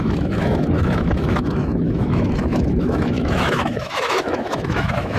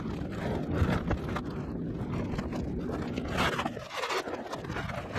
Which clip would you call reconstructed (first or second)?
first